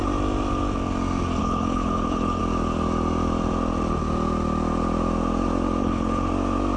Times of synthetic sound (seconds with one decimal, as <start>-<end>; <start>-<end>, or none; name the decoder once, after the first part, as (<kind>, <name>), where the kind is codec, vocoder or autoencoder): 1.4-2.4 (codec, HILCodec); 5.8-6.3